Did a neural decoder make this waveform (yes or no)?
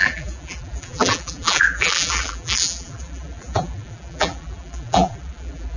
yes